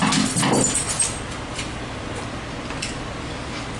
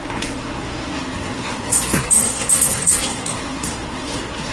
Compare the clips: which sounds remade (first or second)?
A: second